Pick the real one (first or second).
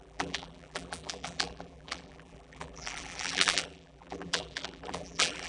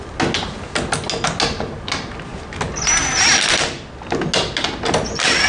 second